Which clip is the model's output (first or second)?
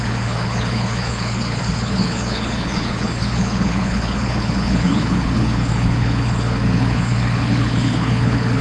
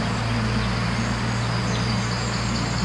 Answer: first